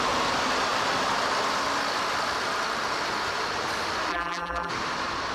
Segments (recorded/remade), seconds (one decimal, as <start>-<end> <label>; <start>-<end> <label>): 0.0-4.1 recorded; 4.1-4.7 remade; 4.7-5.3 recorded